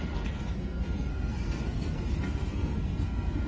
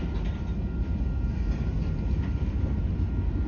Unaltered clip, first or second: second